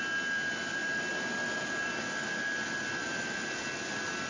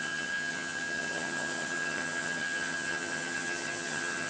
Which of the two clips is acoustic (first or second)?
first